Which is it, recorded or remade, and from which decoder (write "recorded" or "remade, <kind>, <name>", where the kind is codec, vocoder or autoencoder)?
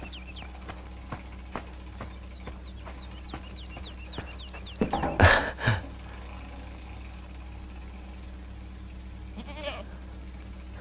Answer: recorded